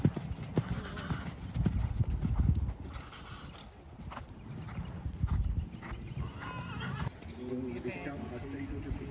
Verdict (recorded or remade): recorded